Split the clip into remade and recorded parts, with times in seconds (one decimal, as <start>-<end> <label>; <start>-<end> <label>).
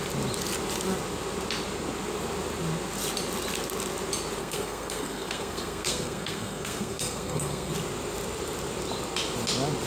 0.0-4.4 recorded; 4.4-7.7 remade; 7.7-9.9 recorded